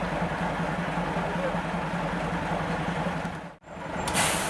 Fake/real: real